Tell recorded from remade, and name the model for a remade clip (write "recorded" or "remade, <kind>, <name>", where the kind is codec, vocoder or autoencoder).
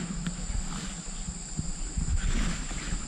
recorded